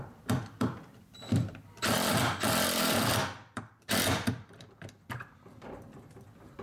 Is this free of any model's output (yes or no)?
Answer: no